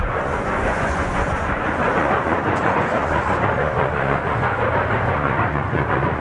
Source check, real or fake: fake